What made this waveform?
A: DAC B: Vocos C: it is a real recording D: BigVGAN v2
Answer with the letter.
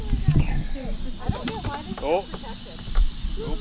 C